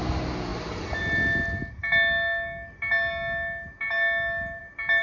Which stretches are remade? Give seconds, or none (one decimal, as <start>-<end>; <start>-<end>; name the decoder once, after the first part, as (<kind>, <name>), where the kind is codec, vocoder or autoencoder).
none